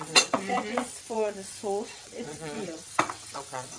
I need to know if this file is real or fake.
fake